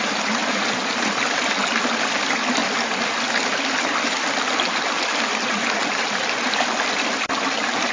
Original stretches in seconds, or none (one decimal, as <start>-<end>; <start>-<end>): 0.0-7.9